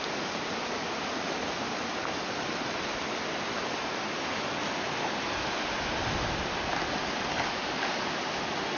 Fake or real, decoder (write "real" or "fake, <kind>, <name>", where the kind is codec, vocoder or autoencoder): real